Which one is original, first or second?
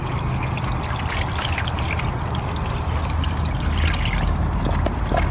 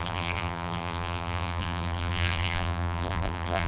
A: first